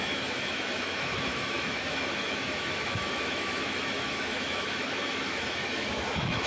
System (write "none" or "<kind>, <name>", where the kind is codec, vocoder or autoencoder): autoencoder, DAC-VAE